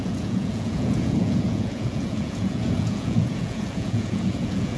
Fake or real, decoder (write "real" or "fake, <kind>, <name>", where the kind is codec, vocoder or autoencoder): fake, vocoder, Vocos